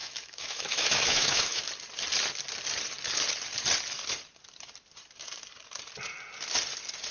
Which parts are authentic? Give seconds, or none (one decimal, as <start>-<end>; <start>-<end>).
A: 1.6-7.1